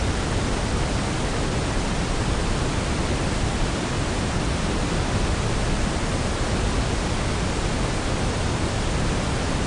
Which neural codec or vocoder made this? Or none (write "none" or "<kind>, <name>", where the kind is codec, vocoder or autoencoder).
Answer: none